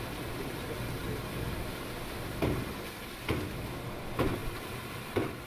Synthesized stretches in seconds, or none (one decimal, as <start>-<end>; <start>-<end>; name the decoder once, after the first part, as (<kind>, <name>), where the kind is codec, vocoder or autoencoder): 4.4-5.5 (vocoder, BigVGAN v2)